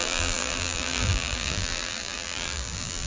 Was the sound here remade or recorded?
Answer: remade